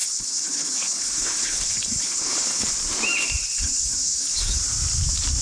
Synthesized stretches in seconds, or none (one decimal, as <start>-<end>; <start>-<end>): 0.0-2.7; 3.4-4.6